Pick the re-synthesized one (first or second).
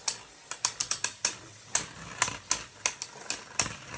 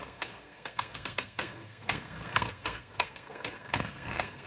second